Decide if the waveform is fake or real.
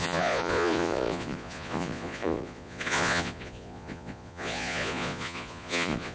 fake